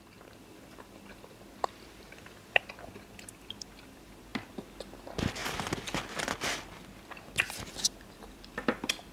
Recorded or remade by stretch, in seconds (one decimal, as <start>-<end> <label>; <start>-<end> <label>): 0.0-9.1 recorded